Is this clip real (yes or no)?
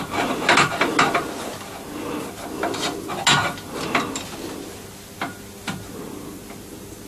yes